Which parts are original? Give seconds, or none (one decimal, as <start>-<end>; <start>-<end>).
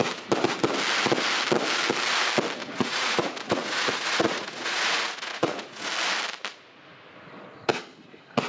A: 0.0-2.6; 5.9-8.5